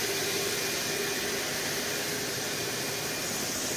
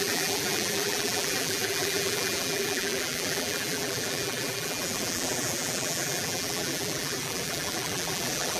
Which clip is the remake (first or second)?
second